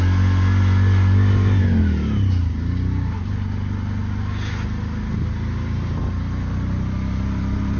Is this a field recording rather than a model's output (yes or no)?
yes